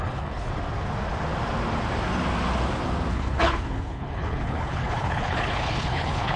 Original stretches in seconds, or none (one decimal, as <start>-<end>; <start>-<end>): 0.5-3.1